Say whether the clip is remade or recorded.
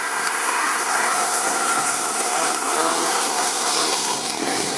remade